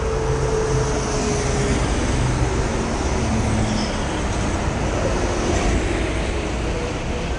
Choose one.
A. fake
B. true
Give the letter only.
B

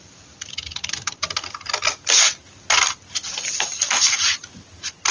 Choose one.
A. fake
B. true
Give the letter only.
B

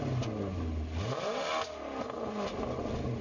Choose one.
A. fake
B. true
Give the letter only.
B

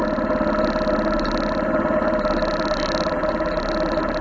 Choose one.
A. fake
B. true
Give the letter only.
B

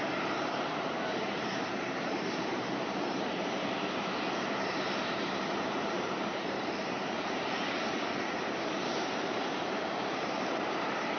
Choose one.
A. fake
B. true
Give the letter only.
A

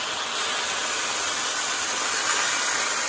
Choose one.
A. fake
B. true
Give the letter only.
B